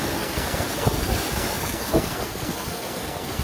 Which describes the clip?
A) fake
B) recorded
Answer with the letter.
A